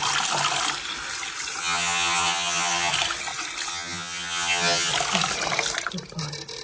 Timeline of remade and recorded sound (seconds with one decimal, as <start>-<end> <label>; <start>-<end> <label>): 0.0-1.6 recorded; 1.6-2.9 remade; 2.9-3.7 recorded; 3.7-4.9 remade; 4.9-6.6 recorded